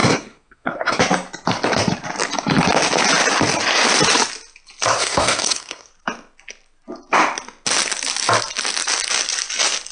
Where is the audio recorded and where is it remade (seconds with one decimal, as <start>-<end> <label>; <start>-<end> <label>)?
0.0-1.0 remade; 1.0-4.9 recorded; 4.9-5.9 remade; 5.9-9.9 recorded